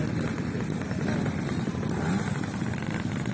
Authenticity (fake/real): real